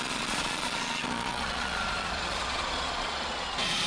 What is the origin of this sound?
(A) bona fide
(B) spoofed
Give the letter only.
B